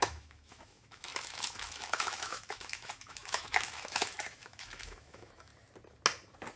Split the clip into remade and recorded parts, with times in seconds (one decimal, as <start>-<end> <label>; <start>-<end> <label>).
0.0-5.5 remade; 5.5-6.6 recorded